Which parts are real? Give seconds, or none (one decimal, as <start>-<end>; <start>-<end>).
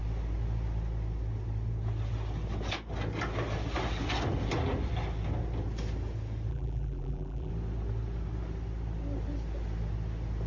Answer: 0.0-6.5; 7.5-10.5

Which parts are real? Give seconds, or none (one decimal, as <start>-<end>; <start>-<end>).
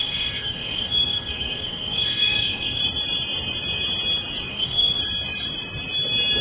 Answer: 2.8-4.5; 5.0-6.4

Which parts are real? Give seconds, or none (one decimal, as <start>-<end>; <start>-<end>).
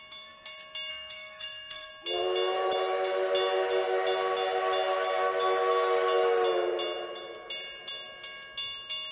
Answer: 0.0-0.9; 1.9-9.1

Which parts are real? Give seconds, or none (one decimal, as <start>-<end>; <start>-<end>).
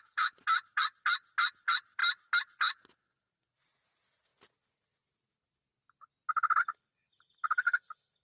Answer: 0.0-8.2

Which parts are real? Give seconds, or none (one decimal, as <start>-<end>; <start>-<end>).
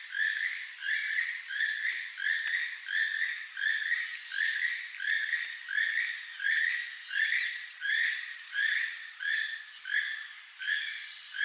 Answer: 0.0-0.8; 1.9-7.4; 9.6-11.4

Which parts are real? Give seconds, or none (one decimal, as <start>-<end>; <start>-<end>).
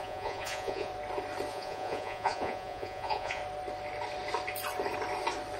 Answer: 0.9-1.5; 3.4-5.6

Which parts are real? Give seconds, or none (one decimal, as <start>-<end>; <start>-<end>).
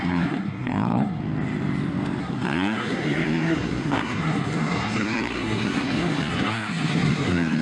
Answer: 1.2-2.2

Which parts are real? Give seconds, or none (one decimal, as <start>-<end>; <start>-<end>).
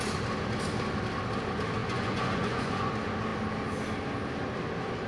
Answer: 0.0-1.8; 2.9-5.1